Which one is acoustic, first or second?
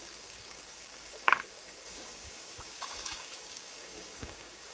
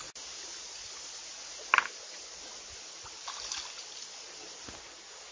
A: second